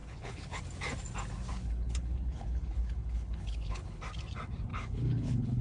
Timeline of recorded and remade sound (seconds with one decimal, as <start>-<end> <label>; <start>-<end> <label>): 0.0-0.6 remade; 0.6-1.5 recorded; 1.5-4.0 remade; 4.0-4.7 recorded; 4.7-5.6 remade